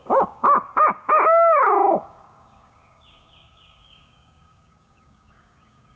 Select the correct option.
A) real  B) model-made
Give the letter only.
B